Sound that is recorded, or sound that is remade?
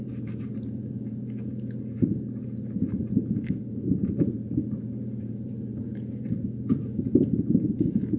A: remade